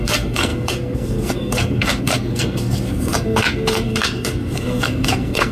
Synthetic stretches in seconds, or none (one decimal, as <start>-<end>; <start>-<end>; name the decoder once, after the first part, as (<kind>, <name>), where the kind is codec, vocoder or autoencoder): 0.0-5.5 (codec, SNAC)